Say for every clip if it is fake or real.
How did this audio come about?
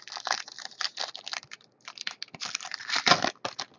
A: real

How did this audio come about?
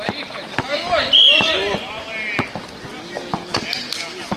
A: real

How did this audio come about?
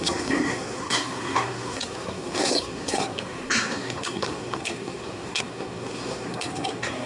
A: fake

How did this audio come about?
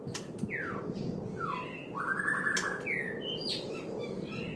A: real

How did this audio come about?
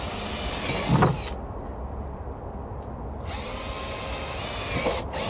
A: real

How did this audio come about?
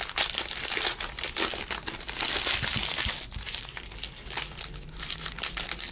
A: real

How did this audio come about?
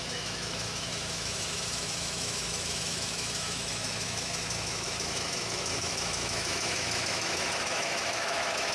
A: fake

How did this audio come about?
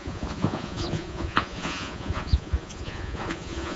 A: fake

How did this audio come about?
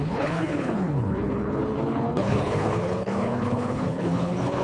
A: fake